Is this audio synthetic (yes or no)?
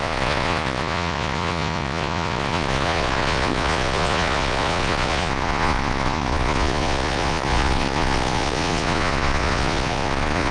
yes